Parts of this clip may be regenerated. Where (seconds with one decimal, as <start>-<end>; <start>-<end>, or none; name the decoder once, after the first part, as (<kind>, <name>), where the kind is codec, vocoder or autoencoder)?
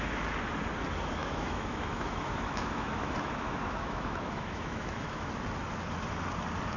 1.2-5.3 (autoencoder, DAC-VAE)